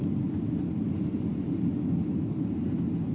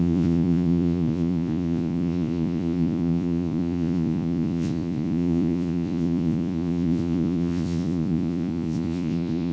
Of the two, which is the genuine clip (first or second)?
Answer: first